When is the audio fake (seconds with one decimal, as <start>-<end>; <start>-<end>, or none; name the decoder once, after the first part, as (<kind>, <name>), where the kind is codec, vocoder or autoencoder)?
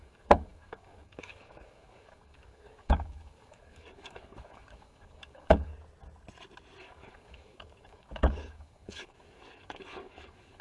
0.0-5.7 (codec, DAC); 6.8-10.6